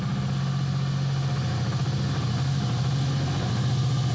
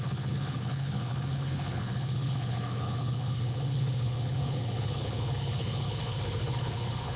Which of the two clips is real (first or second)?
first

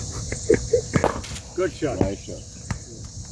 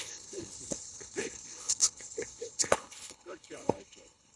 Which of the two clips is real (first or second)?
first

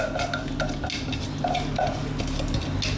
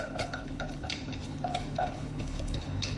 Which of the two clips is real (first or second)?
first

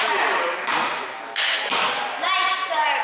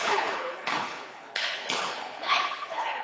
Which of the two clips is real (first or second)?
first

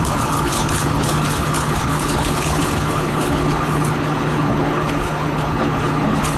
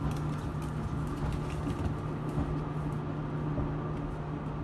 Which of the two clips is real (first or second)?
second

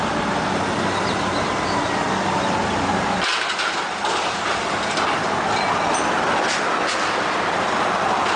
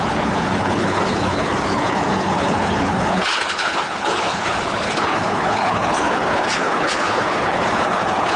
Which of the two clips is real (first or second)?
first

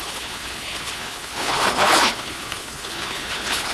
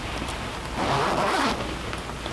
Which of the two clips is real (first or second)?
second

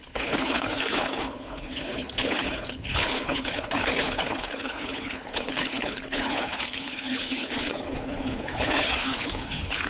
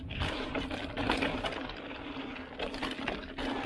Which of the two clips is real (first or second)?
second